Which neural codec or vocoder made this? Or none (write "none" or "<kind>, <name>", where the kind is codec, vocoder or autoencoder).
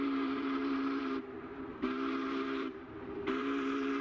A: vocoder, BigVGAN v2